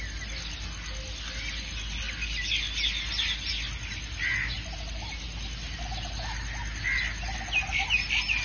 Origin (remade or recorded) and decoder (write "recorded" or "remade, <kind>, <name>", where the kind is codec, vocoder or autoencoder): recorded